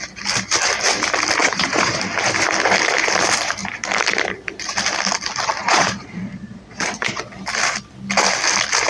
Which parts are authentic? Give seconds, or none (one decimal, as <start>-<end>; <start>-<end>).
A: 0.0-1.4; 2.0-5.6; 7.2-8.9